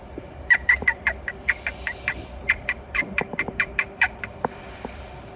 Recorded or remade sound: remade